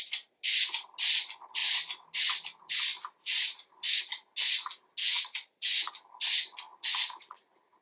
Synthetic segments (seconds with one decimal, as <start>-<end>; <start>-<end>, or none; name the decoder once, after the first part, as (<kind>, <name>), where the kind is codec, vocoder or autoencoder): 5.0-5.9 (vocoder, Vocos); 6.7-7.8